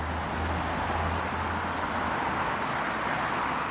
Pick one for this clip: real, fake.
real